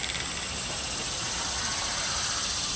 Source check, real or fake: real